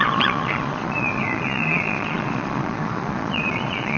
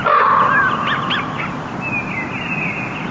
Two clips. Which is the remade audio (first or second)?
first